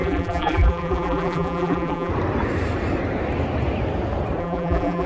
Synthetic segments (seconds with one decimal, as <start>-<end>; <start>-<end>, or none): 0.0-2.1; 4.4-5.1